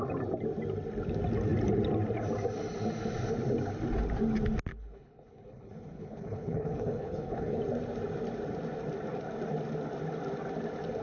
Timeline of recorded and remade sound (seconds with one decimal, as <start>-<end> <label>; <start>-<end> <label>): 0.0-4.7 recorded; 4.7-7.6 remade; 7.6-11.0 recorded